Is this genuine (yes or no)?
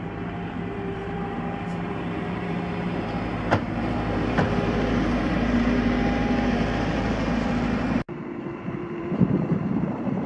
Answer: no